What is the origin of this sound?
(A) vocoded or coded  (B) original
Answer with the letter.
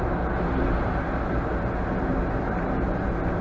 B